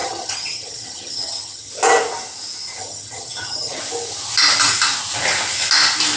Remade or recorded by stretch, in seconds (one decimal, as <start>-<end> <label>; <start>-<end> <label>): 0.0-1.7 remade; 1.7-2.8 recorded; 2.8-3.8 remade; 3.8-6.2 recorded